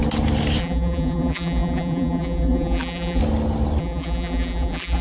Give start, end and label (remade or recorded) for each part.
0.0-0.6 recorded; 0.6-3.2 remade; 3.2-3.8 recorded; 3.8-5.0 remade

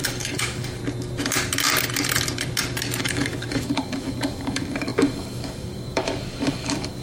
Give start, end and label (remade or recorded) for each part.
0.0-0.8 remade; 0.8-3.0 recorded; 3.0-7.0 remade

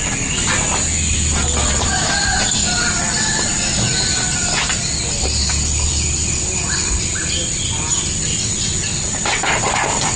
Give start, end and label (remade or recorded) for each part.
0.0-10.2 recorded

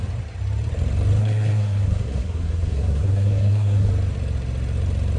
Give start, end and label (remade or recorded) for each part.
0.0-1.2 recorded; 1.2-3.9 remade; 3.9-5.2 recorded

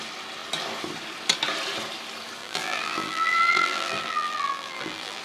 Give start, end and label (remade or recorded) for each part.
0.0-2.4 recorded; 2.4-5.2 remade

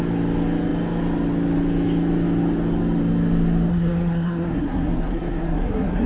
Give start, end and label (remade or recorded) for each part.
0.0-3.7 recorded; 3.7-6.1 remade

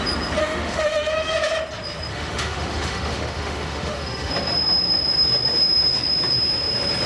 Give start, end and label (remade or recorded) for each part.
0.0-0.4 recorded; 0.4-1.1 remade; 1.1-2.1 recorded; 2.1-4.3 remade; 4.3-7.1 recorded

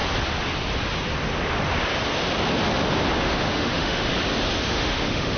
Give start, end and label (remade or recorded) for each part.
0.0-3.2 recorded; 3.2-4.1 remade; 4.1-4.6 recorded; 4.6-5.4 remade